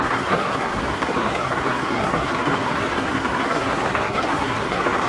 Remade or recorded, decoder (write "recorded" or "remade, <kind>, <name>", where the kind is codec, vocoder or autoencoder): remade, codec, SNAC